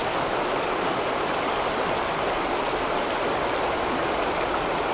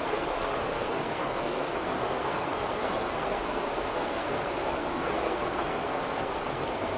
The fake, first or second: second